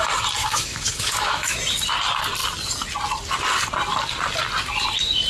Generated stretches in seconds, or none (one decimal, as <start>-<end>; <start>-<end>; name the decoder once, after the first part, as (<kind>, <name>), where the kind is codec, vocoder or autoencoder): 0.4-1.6 (autoencoder, DAC-VAE)